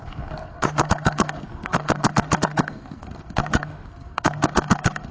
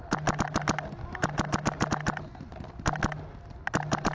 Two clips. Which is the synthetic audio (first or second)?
first